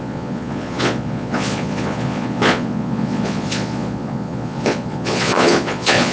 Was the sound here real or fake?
fake